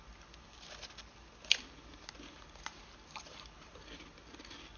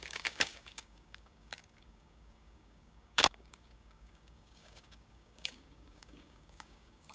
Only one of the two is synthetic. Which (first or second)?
second